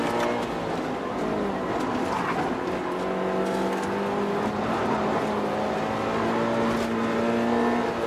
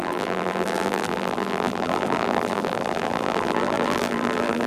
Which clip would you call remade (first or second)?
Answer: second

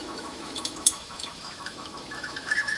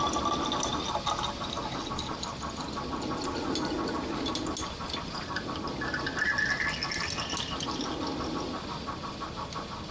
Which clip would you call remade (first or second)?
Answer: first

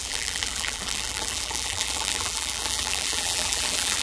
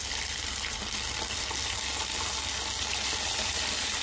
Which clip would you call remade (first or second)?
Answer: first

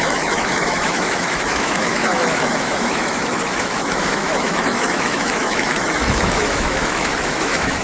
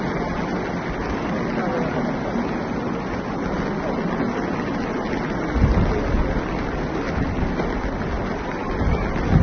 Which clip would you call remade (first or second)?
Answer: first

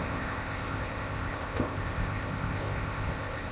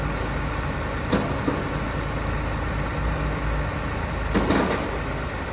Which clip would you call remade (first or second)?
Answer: first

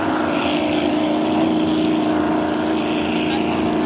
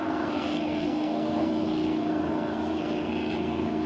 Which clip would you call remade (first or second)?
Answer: second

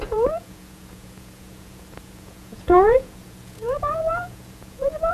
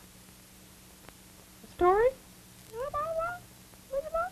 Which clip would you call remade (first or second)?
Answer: first